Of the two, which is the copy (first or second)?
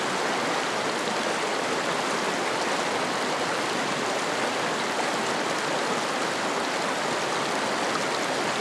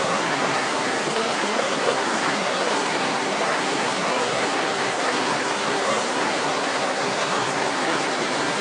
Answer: second